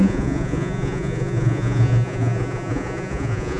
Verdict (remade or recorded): remade